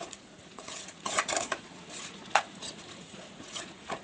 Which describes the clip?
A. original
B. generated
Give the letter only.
B